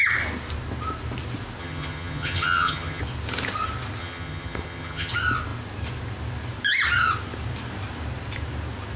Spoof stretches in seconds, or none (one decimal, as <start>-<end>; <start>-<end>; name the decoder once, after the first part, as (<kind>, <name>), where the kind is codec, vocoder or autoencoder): 1.6-3.0 (vocoder, HiFi-GAN); 4.0-5.1